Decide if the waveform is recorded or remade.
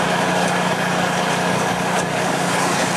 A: remade